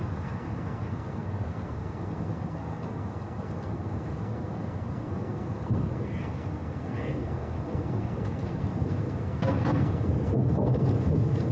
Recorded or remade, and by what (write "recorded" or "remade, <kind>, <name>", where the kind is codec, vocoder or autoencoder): remade, codec, SNAC